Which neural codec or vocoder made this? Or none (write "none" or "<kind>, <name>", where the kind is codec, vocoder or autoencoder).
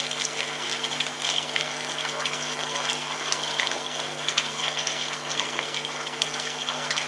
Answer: codec, SNAC